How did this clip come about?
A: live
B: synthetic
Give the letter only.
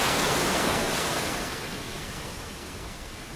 B